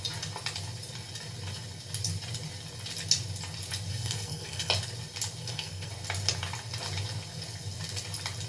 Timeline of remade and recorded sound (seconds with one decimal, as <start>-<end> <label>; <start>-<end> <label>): 0.0-3.9 recorded; 3.9-4.7 remade; 4.7-5.4 recorded; 5.4-5.9 remade; 5.9-8.5 recorded